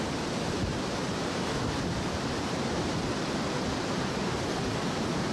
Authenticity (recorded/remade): remade